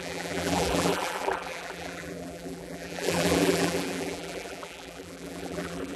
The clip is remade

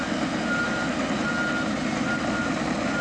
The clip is recorded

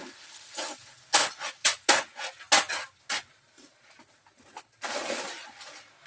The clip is recorded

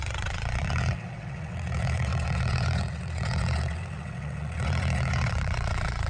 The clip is remade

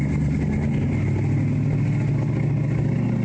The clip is recorded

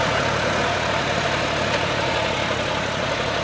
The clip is remade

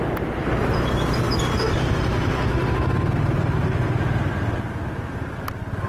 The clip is recorded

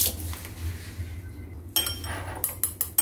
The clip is recorded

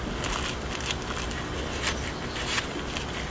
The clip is recorded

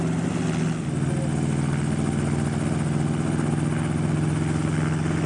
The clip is recorded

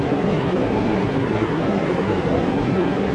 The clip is remade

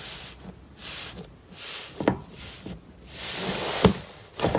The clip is recorded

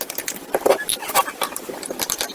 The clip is remade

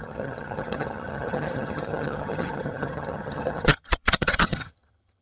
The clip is remade